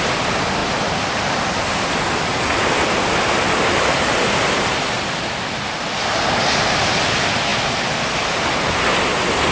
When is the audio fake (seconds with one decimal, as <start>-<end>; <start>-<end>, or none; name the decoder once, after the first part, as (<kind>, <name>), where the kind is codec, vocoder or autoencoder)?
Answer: 0.6-5.2 (vocoder, BigVGAN v2)